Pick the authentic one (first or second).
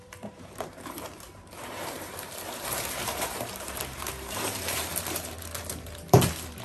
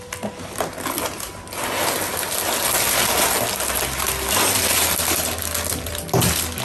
second